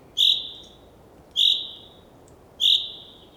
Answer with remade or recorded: recorded